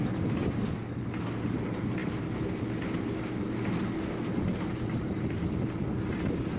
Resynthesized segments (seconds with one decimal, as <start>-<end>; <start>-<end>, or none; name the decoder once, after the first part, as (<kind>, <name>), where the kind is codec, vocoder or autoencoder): none